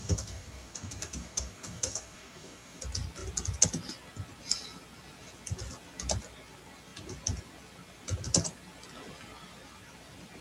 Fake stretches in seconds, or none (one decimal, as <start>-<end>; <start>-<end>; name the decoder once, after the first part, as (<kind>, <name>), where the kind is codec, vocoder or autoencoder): 0.0-2.8 (codec, DAC)